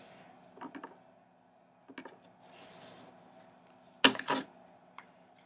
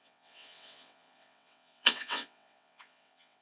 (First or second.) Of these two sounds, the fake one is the second